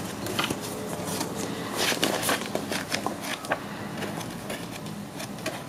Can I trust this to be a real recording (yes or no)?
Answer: yes